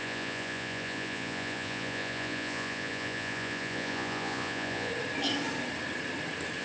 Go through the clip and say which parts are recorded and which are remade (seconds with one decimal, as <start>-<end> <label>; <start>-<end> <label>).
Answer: 0.0-4.9 remade; 4.9-6.6 recorded